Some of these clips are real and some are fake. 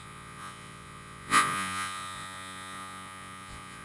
fake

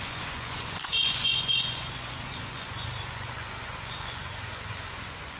fake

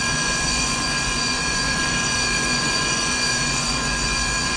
fake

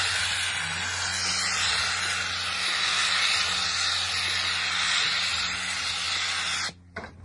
real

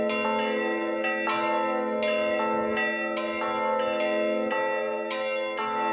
real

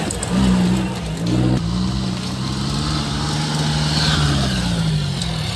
real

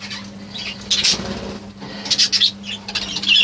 real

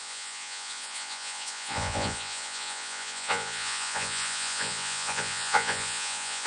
fake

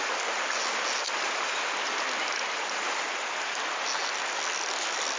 real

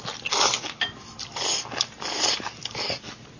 real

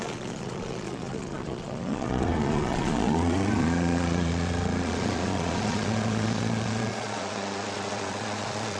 fake